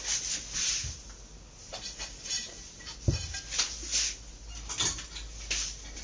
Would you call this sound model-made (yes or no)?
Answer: no